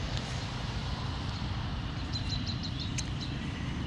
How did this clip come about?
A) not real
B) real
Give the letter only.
A